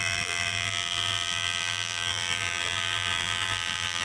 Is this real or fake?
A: fake